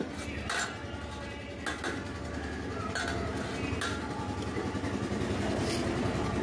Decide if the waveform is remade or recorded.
recorded